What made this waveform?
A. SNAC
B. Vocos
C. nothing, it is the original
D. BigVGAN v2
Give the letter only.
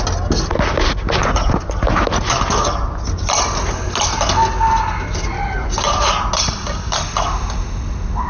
C